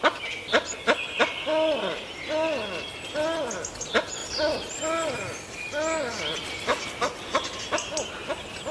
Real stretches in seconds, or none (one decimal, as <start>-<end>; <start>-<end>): 0.0-8.7